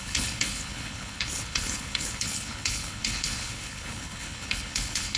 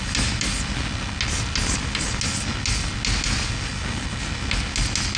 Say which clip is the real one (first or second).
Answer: second